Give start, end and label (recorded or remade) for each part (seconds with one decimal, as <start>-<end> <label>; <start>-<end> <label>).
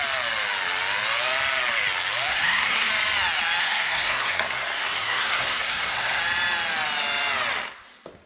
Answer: 0.0-2.3 recorded; 2.3-2.9 remade; 2.9-3.6 recorded; 3.6-6.2 remade; 6.2-8.3 recorded